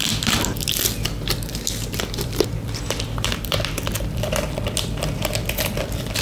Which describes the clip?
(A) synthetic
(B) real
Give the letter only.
A